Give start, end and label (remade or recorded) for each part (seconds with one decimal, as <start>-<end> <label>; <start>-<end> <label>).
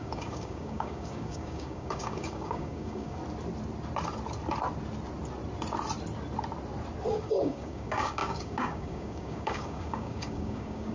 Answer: 0.0-3.2 remade; 3.2-7.1 recorded; 7.1-10.9 remade